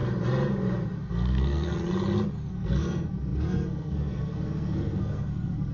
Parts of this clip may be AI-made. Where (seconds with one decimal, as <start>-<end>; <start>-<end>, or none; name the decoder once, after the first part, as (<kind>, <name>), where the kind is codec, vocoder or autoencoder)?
1.1-1.7 (codec, SNAC); 2.5-5.7